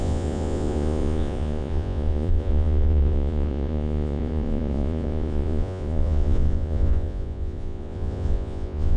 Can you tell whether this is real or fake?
fake